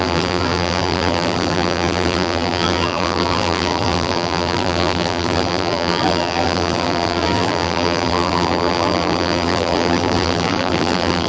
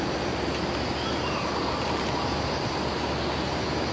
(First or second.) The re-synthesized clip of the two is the first